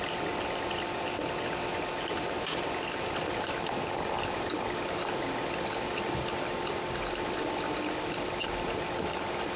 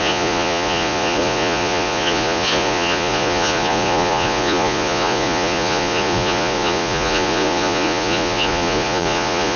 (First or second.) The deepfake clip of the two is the second